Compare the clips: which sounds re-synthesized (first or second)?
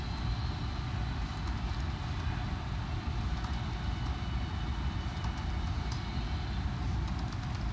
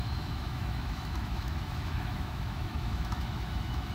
second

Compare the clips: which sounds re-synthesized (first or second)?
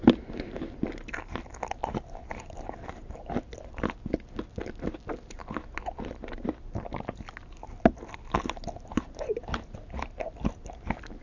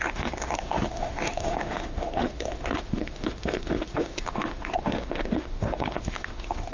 second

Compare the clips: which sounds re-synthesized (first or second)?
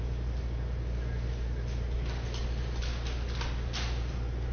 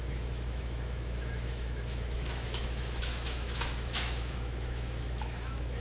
second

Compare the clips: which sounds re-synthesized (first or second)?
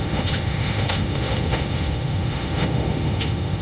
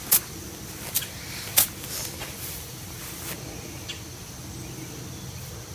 first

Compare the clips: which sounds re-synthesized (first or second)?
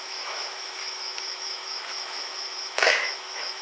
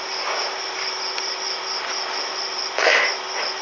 first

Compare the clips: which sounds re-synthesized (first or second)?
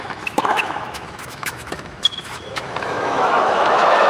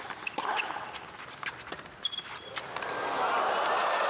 first